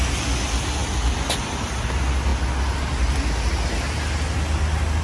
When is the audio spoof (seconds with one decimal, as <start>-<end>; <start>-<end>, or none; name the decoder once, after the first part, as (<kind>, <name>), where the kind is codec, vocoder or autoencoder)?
none

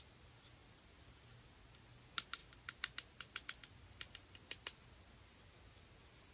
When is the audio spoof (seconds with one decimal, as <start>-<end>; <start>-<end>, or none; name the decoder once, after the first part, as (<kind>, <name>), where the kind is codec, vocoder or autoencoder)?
none

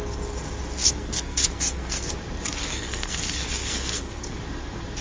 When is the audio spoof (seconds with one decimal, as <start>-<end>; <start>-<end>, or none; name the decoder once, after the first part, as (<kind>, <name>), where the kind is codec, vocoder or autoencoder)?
0.8-2.2 (codec, SNAC); 2.6-4.4